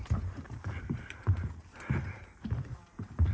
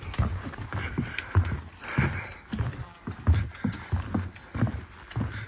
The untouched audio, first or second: second